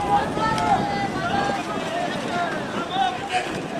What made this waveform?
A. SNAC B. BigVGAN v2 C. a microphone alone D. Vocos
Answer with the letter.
C